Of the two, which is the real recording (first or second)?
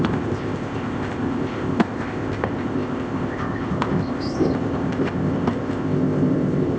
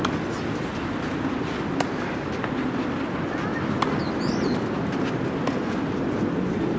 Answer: second